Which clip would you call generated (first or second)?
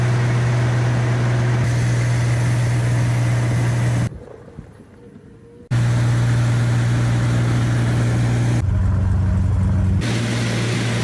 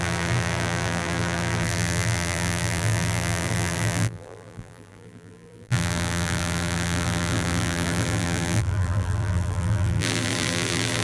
second